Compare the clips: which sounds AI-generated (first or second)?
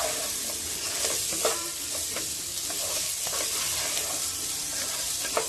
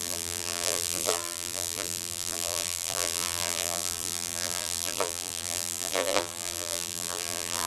second